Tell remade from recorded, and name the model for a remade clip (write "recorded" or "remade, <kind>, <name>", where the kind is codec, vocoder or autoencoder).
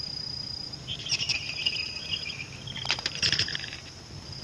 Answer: recorded